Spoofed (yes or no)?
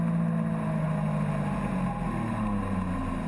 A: no